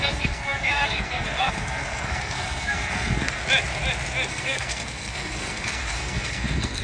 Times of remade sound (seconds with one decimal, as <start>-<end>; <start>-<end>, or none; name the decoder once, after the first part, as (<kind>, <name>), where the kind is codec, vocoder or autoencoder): 0.0-3.4 (codec, SNAC); 4.3-6.8